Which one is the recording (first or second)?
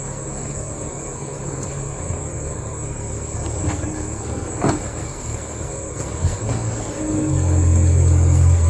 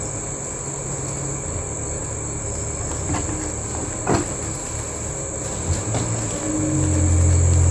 second